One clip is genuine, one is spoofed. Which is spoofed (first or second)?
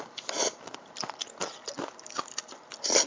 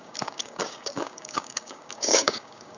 second